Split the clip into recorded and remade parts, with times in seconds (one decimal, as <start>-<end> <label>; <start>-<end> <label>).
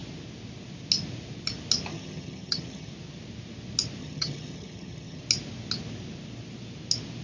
0.0-1.9 recorded; 1.9-2.9 remade; 2.9-4.0 recorded; 4.0-5.2 remade; 5.2-7.2 recorded